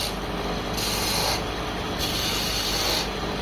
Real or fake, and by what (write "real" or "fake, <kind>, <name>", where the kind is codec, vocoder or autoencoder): real